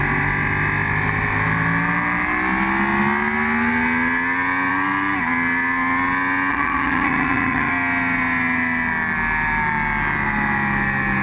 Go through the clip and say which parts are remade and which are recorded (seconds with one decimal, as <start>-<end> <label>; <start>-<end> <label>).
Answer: 0.0-6.5 recorded; 6.5-7.7 remade; 7.7-11.2 recorded

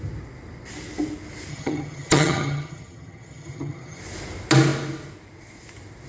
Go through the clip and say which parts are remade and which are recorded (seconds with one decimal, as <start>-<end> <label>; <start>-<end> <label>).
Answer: 0.0-1.5 recorded; 1.5-4.0 remade; 4.0-6.1 recorded

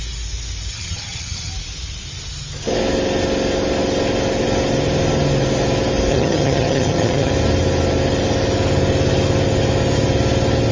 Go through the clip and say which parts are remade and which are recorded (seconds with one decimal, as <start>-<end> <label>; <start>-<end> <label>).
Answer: 0.0-0.7 recorded; 0.7-1.5 remade; 1.5-6.1 recorded; 6.1-7.3 remade; 7.3-10.7 recorded